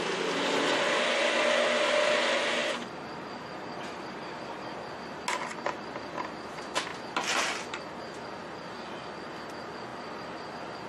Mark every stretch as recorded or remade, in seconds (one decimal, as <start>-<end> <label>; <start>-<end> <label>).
0.0-2.6 recorded; 2.6-4.0 remade; 4.0-9.9 recorded; 9.9-10.5 remade; 10.5-10.9 recorded